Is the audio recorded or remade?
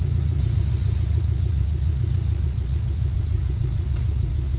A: remade